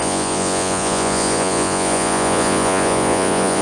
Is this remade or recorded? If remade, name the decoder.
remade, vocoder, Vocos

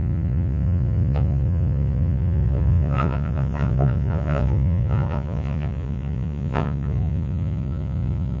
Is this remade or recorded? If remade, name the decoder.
remade, vocoder, Vocos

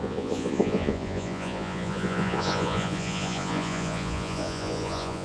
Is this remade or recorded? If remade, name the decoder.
remade, vocoder, Vocos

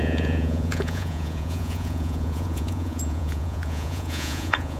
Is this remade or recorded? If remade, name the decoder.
remade, vocoder, Vocos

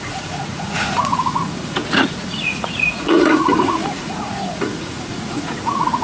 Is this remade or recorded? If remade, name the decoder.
remade, vocoder, Vocos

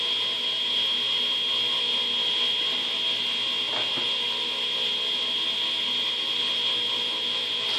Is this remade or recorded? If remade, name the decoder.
recorded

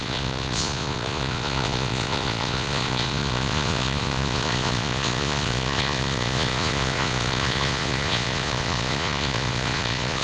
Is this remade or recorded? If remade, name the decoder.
remade, vocoder, Vocos